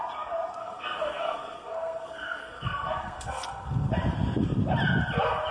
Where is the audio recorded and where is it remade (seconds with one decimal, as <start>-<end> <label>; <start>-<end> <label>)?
0.0-0.6 recorded; 0.6-3.9 remade; 3.9-5.5 recorded